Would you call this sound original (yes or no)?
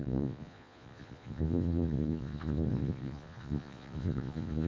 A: no